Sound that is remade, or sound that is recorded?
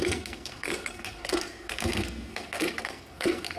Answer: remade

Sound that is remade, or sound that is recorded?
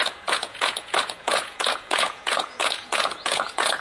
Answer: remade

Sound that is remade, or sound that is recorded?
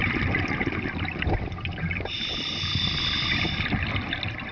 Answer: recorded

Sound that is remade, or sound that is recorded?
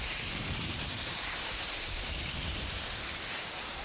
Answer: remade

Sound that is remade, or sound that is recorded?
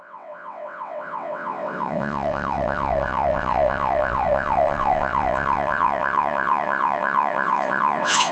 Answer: remade